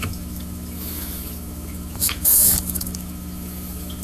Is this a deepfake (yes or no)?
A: yes